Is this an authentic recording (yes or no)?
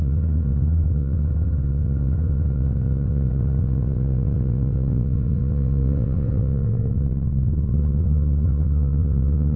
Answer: no